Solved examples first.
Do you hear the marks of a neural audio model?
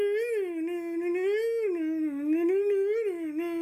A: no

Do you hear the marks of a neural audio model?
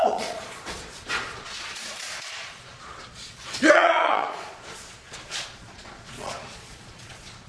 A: yes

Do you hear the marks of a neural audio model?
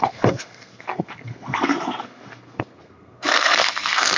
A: yes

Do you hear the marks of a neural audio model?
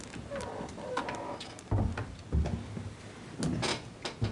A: no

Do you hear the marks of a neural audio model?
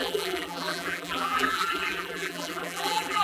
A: yes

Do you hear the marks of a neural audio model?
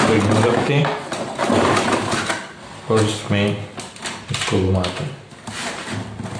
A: no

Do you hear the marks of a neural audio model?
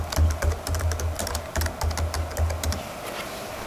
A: no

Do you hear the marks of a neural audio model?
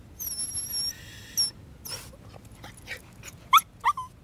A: no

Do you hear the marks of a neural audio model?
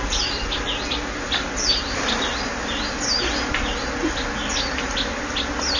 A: no